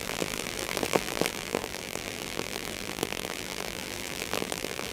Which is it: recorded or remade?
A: remade